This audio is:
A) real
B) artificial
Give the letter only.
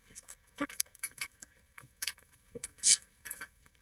B